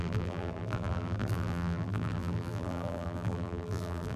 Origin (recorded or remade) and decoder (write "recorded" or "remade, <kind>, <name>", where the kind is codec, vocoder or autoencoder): remade, vocoder, BigVGAN v2